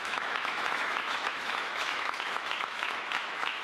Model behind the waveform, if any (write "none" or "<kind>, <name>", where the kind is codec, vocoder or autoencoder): autoencoder, DAC-VAE